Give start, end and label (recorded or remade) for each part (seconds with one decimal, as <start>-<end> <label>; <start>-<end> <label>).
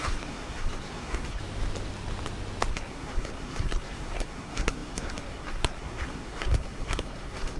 0.0-1.4 remade; 1.4-2.7 recorded; 2.7-7.6 remade